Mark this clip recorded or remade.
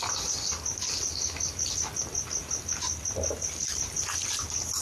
recorded